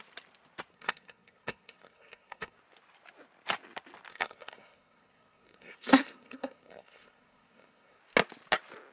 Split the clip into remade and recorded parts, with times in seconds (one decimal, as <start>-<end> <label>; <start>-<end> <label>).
0.0-0.7 recorded; 0.7-2.6 remade; 2.6-4.1 recorded; 4.1-8.0 remade; 8.0-8.9 recorded